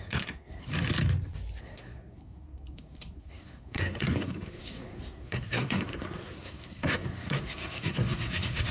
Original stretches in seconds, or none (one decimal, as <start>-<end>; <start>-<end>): 0.7-1.6

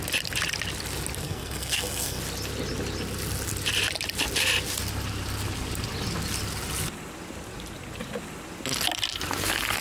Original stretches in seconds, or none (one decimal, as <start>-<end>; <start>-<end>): 0.0-1.2; 2.2-9.8

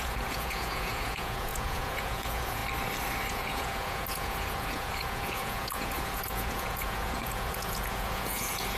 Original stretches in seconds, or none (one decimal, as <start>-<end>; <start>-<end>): 2.6-3.3